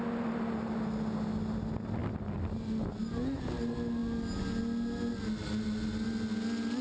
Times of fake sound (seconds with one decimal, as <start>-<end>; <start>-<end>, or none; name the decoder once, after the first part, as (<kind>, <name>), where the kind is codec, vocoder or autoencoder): none